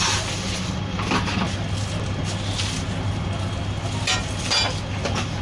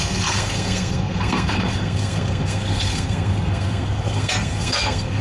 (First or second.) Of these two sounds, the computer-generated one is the second